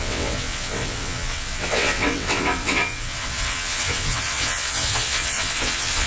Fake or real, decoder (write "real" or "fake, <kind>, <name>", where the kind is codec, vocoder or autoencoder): fake, vocoder, WaveNeXt